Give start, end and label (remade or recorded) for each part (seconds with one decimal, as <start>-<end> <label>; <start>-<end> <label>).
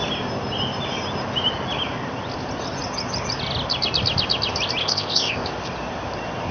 0.0-4.8 recorded; 4.8-5.5 remade; 5.5-6.5 recorded